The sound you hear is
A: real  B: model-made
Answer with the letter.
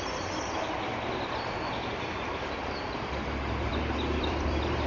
B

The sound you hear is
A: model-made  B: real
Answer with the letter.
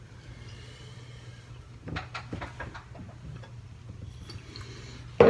B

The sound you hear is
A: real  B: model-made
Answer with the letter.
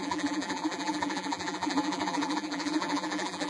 B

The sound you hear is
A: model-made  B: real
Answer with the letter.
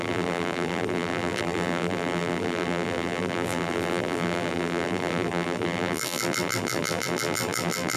A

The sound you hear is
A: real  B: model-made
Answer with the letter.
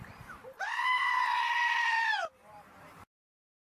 B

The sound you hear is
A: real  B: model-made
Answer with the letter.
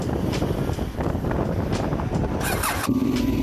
B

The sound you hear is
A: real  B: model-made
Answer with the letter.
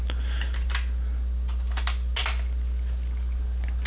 A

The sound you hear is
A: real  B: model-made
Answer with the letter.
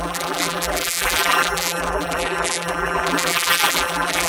B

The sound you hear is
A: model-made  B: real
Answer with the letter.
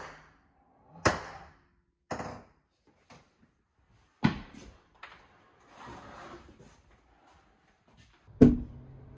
B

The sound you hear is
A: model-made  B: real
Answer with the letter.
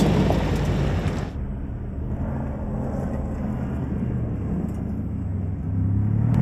B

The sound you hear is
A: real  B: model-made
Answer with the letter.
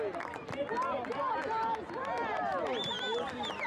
A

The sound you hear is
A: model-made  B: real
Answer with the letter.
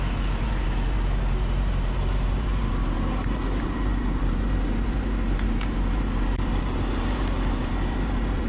A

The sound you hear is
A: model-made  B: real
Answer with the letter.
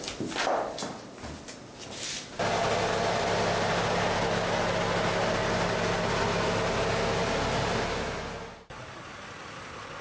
B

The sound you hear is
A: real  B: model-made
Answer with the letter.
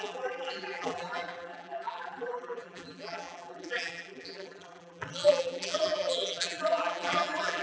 B